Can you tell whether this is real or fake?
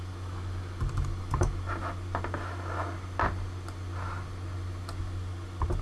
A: real